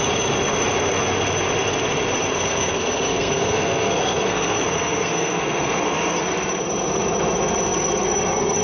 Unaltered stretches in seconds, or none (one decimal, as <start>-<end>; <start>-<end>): 0.0-2.3; 6.2-8.6